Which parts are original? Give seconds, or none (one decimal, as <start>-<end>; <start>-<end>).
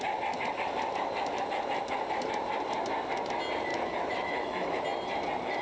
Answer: 0.0-3.7; 4.8-5.6